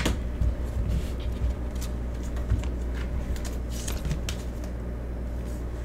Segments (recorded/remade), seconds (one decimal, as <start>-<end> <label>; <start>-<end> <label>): 0.0-5.8 recorded